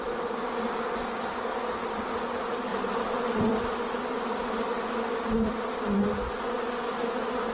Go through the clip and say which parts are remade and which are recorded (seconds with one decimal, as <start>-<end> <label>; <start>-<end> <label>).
0.0-2.7 recorded; 2.7-3.5 remade; 3.5-7.5 recorded